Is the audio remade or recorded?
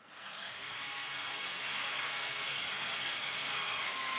remade